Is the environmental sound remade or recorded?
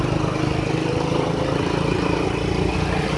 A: recorded